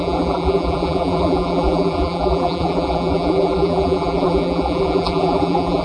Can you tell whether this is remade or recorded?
remade